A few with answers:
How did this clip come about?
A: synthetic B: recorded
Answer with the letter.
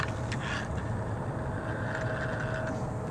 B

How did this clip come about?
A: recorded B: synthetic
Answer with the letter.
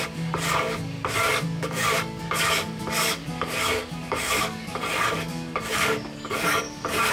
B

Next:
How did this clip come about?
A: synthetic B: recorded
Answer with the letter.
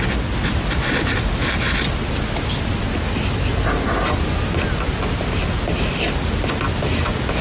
B